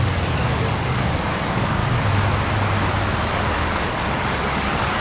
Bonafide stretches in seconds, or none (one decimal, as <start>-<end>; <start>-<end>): 1.8-3.3